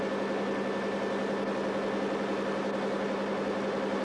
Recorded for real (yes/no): yes